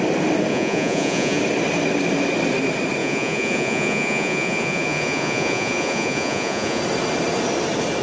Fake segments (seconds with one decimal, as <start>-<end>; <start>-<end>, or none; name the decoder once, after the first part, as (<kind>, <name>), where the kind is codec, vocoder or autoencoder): 0.5-1.4 (vocoder, Vocos); 3.0-6.8